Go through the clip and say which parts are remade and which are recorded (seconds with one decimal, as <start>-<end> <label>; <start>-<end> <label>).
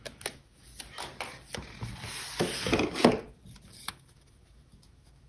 0.0-0.7 remade; 0.7-3.9 recorded; 3.9-5.3 remade